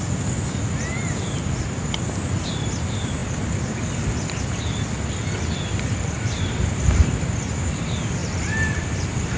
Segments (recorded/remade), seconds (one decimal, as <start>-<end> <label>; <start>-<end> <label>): 0.0-8.2 recorded; 8.2-9.4 remade